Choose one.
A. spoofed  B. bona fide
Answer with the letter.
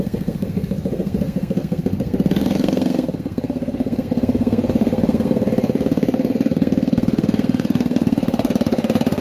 A